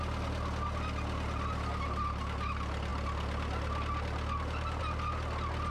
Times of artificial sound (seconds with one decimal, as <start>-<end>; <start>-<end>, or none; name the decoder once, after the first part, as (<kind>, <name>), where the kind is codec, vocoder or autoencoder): none